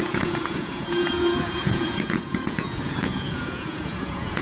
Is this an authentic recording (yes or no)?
no